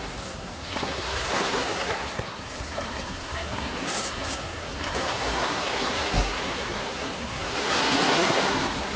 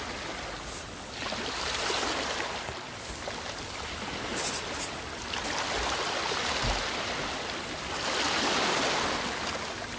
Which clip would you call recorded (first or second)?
second